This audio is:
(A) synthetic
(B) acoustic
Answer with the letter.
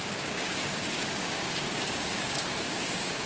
A